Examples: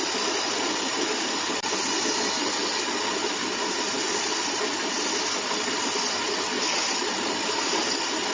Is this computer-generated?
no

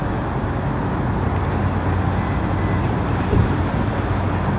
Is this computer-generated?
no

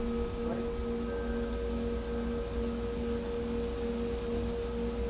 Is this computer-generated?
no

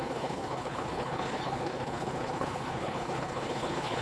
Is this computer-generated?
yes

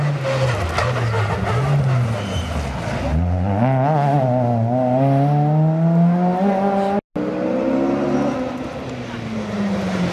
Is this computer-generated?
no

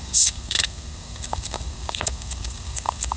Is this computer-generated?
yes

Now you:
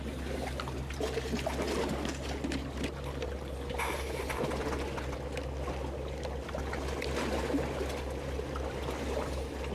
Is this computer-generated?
no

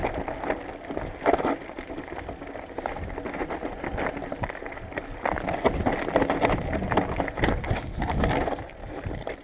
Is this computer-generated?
no